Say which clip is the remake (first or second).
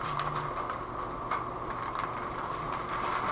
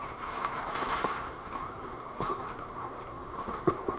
second